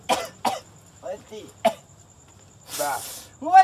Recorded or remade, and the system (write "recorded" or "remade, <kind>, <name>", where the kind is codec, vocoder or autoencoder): recorded